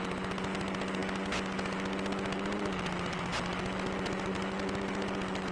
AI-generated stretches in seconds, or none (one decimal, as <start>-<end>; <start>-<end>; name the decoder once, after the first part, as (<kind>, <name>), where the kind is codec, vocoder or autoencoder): none